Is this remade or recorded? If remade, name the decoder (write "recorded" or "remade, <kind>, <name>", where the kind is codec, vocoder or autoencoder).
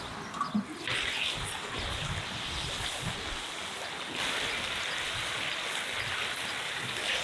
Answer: recorded